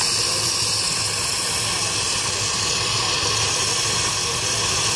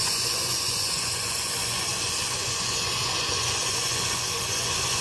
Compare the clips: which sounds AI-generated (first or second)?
second